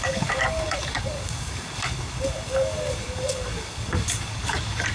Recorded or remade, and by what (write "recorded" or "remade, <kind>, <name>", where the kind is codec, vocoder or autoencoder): remade, codec, DAC